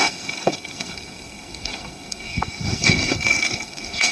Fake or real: fake